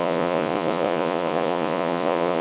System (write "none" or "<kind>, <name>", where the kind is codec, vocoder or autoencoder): vocoder, Vocos